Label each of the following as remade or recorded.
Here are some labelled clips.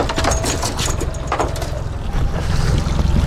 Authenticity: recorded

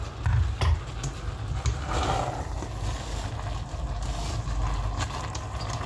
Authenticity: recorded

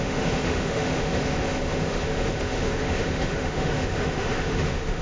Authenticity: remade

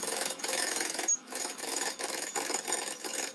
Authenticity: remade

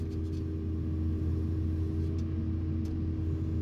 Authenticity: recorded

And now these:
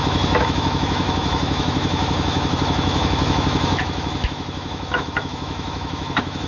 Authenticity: remade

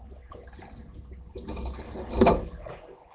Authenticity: recorded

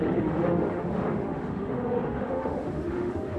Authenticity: remade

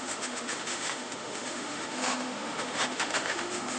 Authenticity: remade